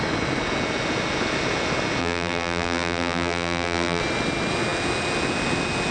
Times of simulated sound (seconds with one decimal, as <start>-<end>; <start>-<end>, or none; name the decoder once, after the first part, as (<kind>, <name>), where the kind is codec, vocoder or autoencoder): 2.0-4.0 (vocoder, BigVGAN v2)